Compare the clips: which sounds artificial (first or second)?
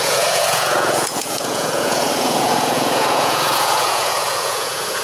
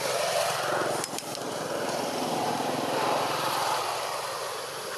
first